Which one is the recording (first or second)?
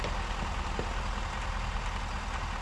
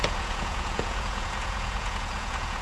first